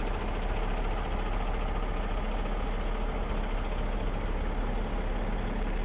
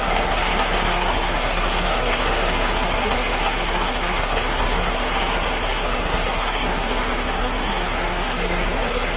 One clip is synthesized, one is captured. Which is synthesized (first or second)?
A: second